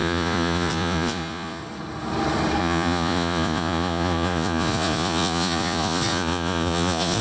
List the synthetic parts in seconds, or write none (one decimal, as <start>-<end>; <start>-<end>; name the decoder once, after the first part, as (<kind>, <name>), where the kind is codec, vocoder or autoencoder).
0.0-1.6 (vocoder, Vocos); 2.6-7.2